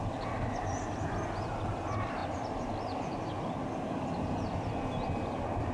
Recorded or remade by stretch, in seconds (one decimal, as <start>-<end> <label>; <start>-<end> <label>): 0.0-5.7 recorded